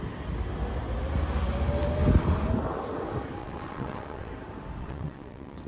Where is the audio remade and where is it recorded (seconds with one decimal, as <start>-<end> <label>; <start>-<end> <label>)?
0.0-3.4 recorded; 3.4-4.3 remade; 4.3-4.8 recorded; 4.8-5.7 remade

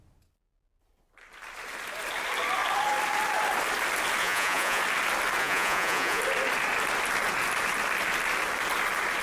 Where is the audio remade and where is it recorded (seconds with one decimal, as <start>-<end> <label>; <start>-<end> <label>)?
0.0-4.2 recorded; 4.2-4.8 remade; 4.8-5.4 recorded; 5.4-6.2 remade; 6.2-9.2 recorded

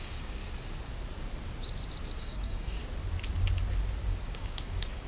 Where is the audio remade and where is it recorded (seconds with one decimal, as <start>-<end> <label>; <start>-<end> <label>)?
0.0-0.4 remade; 0.4-2.2 recorded; 2.2-2.8 remade; 2.8-4.3 recorded; 4.3-5.1 remade

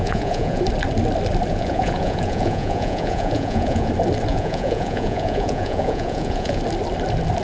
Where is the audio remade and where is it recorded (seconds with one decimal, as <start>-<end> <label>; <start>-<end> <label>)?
0.0-0.6 remade; 0.6-1.5 recorded; 1.5-3.9 remade; 3.9-4.3 recorded; 4.3-6.6 remade; 6.6-7.4 recorded

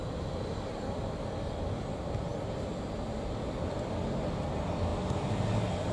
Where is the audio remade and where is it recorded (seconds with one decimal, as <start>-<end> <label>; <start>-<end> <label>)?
0.0-5.9 recorded

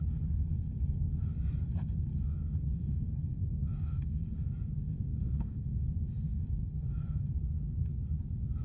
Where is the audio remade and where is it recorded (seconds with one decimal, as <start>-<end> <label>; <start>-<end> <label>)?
0.0-2.8 recorded; 2.8-4.3 remade; 4.3-5.1 recorded; 5.1-5.7 remade; 5.7-6.6 recorded; 6.6-7.3 remade; 7.3-8.6 recorded